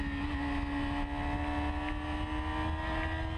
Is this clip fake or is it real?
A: real